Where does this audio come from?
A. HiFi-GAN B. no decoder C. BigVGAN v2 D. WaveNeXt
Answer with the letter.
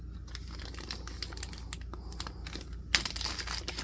B